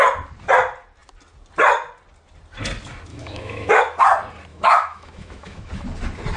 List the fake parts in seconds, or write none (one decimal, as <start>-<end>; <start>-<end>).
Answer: 3.1-3.8; 4.5-5.7